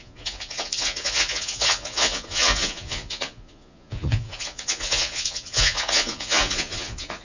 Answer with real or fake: fake